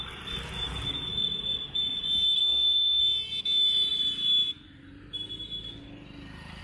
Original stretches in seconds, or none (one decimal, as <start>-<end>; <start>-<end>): 0.0-2.4; 3.0-6.6